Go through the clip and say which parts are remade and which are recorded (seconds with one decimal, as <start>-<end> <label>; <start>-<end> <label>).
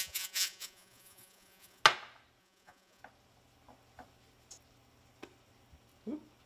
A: 0.0-1.8 remade; 1.8-2.4 recorded; 2.4-3.0 remade; 3.0-6.5 recorded